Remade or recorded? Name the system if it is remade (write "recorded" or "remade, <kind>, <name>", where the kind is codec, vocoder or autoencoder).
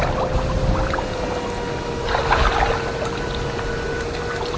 recorded